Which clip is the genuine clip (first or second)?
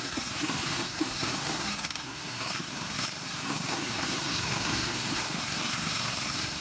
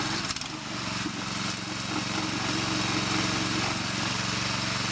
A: second